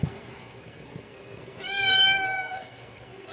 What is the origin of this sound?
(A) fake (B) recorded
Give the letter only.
A